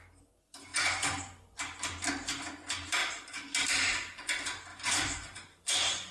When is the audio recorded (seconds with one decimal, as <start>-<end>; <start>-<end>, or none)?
0.0-0.7; 1.6-4.7